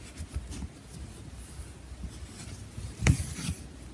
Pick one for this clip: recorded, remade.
recorded